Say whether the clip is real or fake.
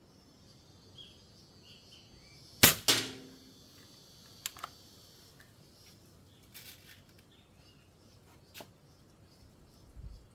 real